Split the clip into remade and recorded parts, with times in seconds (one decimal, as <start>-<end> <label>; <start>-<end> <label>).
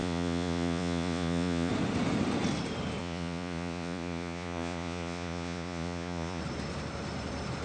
0.0-1.7 remade; 1.7-3.0 recorded; 3.0-6.4 remade; 6.4-7.6 recorded